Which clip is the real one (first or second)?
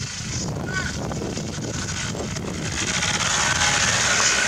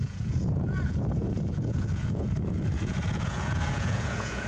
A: first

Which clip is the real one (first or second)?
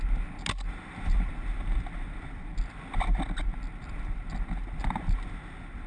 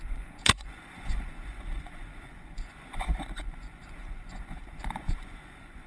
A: first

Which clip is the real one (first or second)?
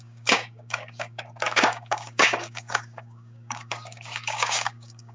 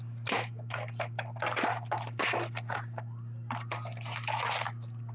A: second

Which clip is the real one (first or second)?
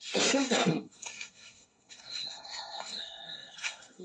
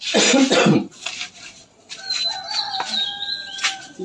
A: second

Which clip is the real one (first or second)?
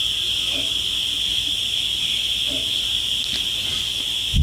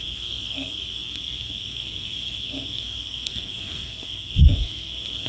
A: first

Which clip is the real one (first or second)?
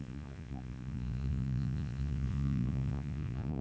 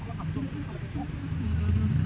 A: second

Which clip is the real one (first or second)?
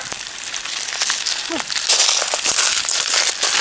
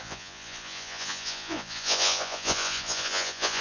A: first